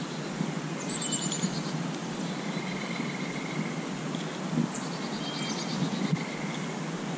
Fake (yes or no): no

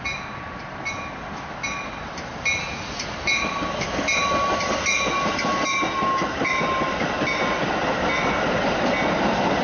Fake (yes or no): no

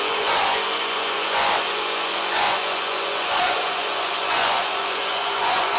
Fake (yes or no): yes